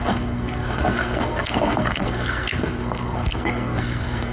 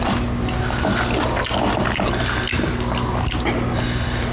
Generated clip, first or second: first